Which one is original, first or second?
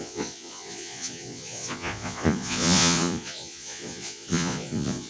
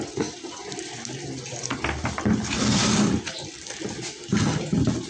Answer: second